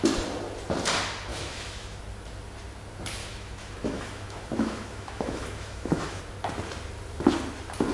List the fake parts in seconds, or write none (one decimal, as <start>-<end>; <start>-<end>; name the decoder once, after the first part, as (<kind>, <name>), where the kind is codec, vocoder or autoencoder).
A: 1.3-2.0 (autoencoder, DAC-VAE); 3.2-6.2